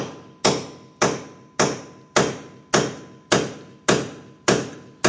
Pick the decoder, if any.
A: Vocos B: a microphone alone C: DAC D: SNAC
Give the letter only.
B